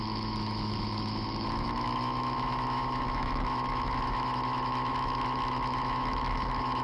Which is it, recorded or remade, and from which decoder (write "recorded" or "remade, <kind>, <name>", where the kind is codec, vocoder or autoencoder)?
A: remade, autoencoder, DAC-VAE